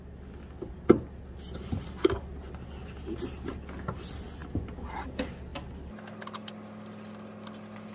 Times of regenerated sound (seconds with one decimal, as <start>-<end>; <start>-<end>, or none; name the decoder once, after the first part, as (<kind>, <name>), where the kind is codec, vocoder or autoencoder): none